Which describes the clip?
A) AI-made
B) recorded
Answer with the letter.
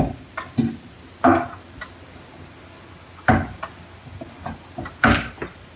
B